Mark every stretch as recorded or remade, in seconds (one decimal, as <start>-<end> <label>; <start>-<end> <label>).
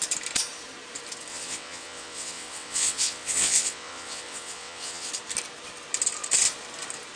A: 0.0-1.3 recorded; 1.3-5.1 remade; 5.1-7.2 recorded